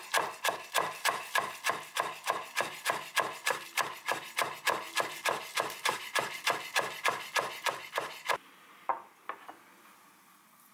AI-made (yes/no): no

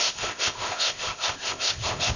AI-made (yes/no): yes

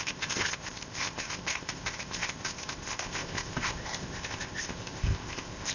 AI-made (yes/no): yes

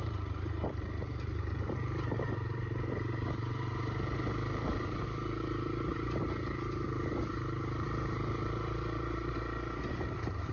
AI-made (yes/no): yes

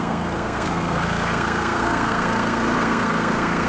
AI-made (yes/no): yes